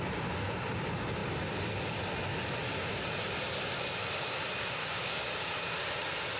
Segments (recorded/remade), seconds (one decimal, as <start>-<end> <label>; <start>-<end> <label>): 0.0-4.8 recorded; 4.8-5.4 remade; 5.4-6.4 recorded